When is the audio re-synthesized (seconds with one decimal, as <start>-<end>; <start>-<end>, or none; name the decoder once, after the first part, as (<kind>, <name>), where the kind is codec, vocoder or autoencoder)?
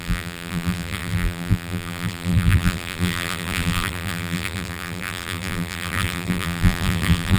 0.0-7.4 (vocoder, BigVGAN v2)